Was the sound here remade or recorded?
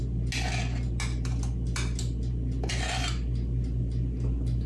recorded